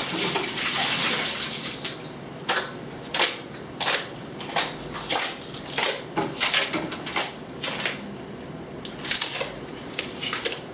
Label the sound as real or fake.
real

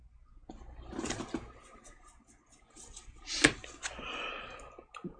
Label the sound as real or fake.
real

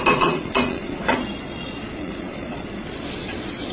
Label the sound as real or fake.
fake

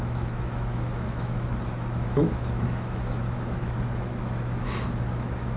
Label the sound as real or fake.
fake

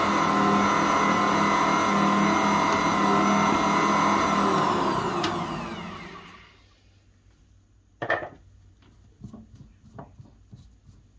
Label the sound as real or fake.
real